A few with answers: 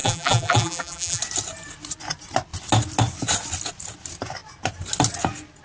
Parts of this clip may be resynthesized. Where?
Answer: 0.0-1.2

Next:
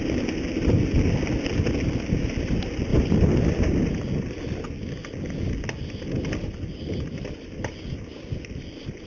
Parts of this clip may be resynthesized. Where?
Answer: none

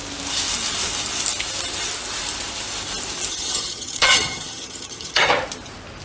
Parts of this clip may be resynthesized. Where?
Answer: 3.3-5.2

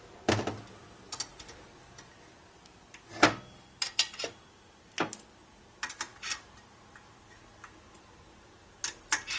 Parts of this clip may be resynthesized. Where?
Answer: none

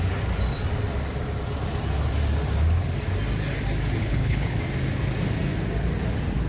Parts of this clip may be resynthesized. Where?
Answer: 4.0-4.6